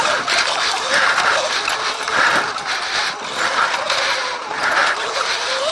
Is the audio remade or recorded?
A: recorded